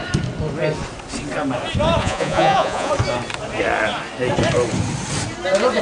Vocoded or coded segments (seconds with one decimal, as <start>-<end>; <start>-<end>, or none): 2.0-2.9